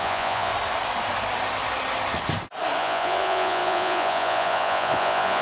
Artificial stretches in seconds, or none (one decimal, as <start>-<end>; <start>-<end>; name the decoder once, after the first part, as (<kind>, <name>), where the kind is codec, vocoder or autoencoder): 0.0-0.5 (vocoder, Vocos); 2.8-5.4